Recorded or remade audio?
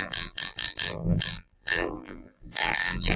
remade